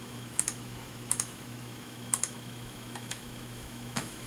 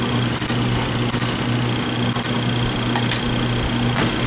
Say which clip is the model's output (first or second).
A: first